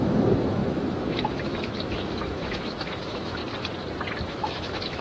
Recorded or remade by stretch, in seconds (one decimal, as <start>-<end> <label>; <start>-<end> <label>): 0.0-3.4 remade; 3.4-4.2 recorded; 4.2-5.0 remade